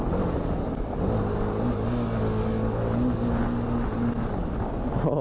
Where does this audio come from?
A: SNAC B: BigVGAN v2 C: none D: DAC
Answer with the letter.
C